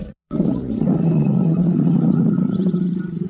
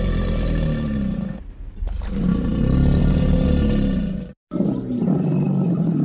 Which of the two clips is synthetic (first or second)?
first